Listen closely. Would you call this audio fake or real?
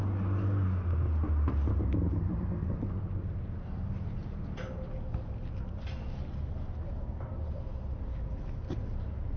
real